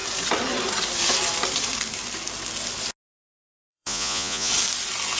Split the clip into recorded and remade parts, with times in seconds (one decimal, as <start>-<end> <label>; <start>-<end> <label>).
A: 0.0-3.7 recorded; 3.7-4.5 remade; 4.5-5.2 recorded

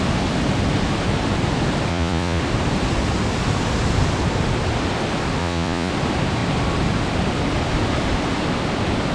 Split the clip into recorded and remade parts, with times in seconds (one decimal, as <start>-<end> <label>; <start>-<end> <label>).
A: 0.0-1.9 recorded; 1.9-2.4 remade; 2.4-5.4 recorded; 5.4-5.9 remade; 5.9-9.1 recorded

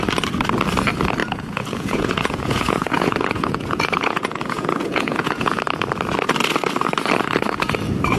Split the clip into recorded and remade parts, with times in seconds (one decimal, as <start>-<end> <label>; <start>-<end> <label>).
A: 0.0-1.2 recorded; 1.2-5.6 remade; 5.6-8.2 recorded

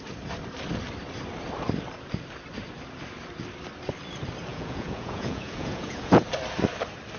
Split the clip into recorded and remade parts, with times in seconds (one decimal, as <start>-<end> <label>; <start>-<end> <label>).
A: 0.0-4.5 recorded; 4.5-6.2 remade; 6.2-7.2 recorded

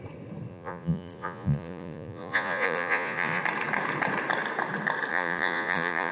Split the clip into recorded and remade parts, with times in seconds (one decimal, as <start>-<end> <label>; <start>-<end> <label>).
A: 0.0-0.5 recorded; 0.5-3.4 remade; 3.4-5.1 recorded; 5.1-6.1 remade

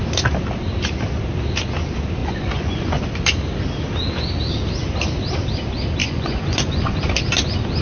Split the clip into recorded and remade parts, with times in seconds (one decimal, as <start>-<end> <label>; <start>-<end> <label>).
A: 0.0-2.2 recorded; 2.2-3.0 remade; 3.0-6.0 recorded; 6.0-7.0 remade; 7.0-7.8 recorded

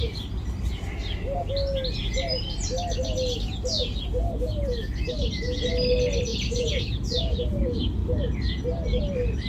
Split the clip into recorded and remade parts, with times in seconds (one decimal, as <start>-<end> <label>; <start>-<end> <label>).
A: 0.0-6.3 recorded; 6.3-7.6 remade; 7.6-9.5 recorded